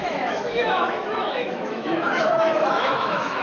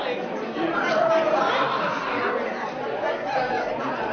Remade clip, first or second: first